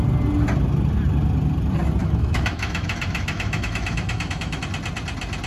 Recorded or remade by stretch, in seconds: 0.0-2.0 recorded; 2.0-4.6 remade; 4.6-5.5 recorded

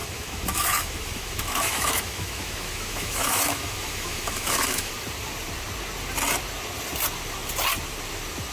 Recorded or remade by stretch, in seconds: 0.0-4.9 remade; 4.9-8.5 recorded

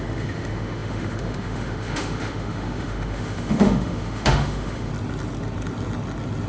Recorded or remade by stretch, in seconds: 0.0-4.9 remade; 4.9-6.5 recorded

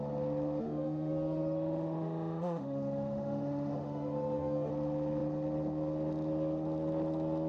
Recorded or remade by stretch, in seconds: 0.0-0.6 recorded; 0.6-4.7 remade; 4.7-7.5 recorded